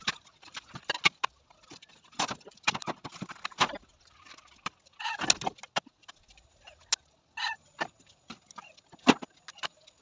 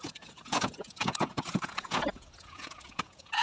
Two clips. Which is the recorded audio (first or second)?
first